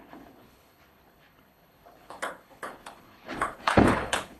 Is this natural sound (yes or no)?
no